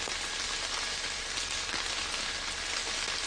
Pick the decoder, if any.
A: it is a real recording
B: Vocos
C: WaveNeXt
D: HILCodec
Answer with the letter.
A